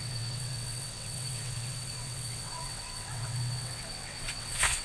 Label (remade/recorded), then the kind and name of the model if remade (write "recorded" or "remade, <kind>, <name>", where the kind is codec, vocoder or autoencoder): remade, vocoder, WaveNeXt